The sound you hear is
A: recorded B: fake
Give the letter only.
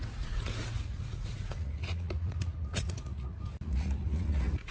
B